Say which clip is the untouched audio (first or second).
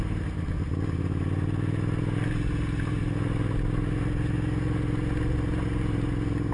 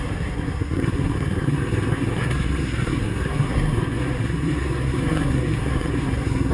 first